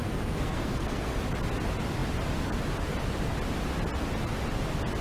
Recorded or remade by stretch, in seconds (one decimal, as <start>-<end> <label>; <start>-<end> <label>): 0.0-1.2 remade; 1.2-5.0 recorded